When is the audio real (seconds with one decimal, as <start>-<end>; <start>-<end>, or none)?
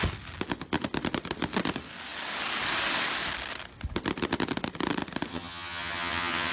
0.0-5.3